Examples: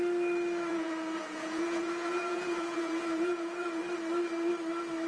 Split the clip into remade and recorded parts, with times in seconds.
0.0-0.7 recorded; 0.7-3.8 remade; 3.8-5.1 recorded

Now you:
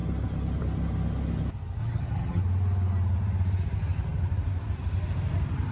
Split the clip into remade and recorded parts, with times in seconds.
0.0-1.8 recorded; 1.8-2.4 remade; 2.4-5.7 recorded

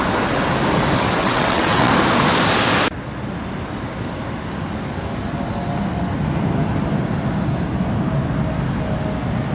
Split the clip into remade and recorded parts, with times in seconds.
0.0-1.2 recorded; 1.2-1.9 remade; 1.9-9.5 recorded

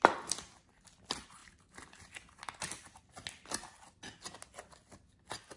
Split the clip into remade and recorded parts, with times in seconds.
0.0-5.6 recorded

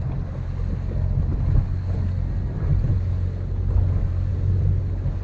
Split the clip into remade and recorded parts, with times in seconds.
0.0-5.2 recorded

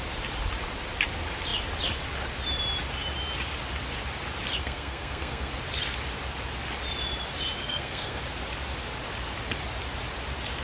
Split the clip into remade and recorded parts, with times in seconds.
0.0-4.6 recorded; 4.6-5.5 remade; 5.5-7.6 recorded; 7.6-8.2 remade; 8.2-10.6 recorded